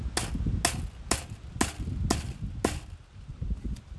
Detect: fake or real real